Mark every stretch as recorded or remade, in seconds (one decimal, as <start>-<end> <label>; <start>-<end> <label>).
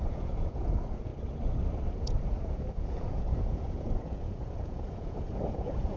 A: 0.0-1.1 remade; 1.1-1.9 recorded; 1.9-6.0 remade